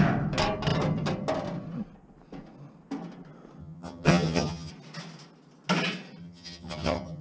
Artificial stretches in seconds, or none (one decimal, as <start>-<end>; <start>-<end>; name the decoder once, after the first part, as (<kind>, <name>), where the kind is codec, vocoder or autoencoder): 3.6-4.7 (vocoder, HiFi-GAN); 6.2-7.2